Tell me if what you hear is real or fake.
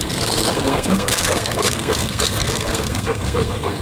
fake